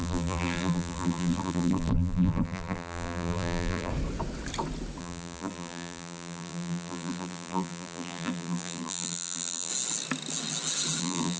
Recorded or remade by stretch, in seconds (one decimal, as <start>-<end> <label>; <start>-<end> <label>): 0.0-3.9 remade; 3.9-5.0 recorded; 5.0-9.7 remade; 9.7-11.0 recorded; 11.0-11.4 remade